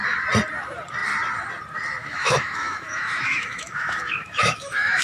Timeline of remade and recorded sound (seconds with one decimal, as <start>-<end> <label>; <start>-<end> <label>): 0.0-2.0 recorded; 2.0-5.0 remade